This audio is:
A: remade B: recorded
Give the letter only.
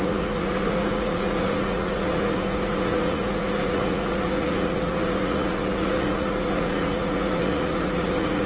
A